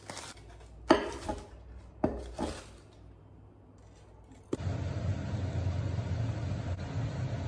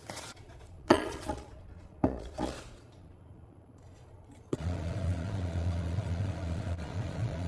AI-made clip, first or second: second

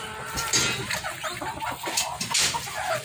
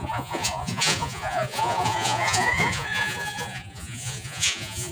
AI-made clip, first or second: second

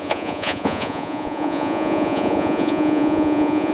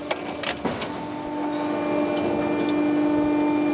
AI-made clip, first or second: first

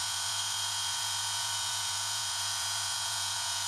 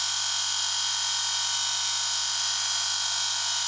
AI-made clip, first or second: first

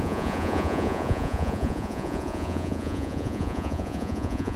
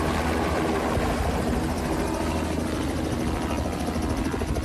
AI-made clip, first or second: first